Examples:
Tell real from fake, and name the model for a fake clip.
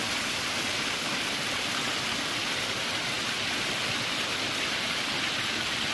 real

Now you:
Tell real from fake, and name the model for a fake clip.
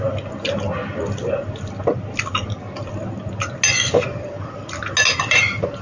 real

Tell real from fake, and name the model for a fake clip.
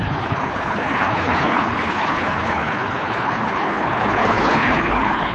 fake, codec, HILCodec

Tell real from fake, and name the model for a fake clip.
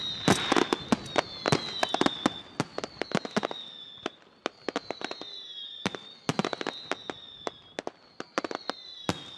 real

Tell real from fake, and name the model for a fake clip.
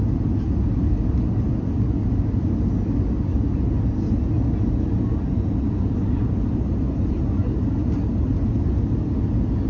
real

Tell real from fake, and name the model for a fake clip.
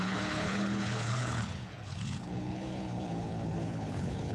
fake, codec, HILCodec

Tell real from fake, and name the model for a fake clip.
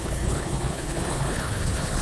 fake, codec, HILCodec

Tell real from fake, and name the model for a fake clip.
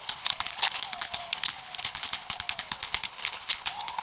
fake, codec, HILCodec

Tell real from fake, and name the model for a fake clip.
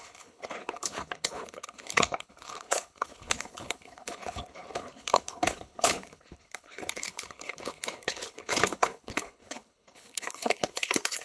fake, codec, HILCodec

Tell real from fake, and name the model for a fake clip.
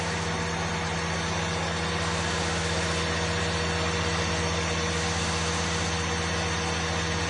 real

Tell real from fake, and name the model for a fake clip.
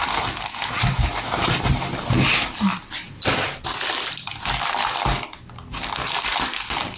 real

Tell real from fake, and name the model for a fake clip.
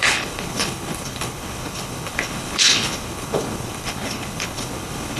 fake, codec, HILCodec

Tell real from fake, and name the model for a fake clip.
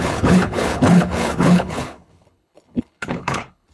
fake, codec, HILCodec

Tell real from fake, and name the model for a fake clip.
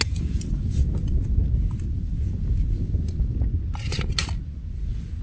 real